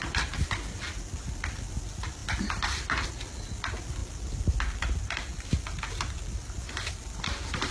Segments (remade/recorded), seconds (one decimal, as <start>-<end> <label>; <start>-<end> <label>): 0.0-7.7 recorded